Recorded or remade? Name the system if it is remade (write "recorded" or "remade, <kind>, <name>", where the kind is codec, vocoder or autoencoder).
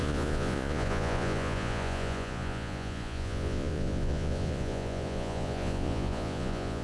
remade, vocoder, Vocos